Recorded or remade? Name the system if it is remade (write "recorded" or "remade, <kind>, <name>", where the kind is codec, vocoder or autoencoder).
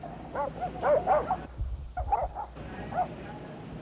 remade, vocoder, BigVGAN v2